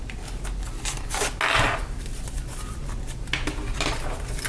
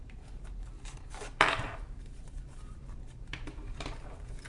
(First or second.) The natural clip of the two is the first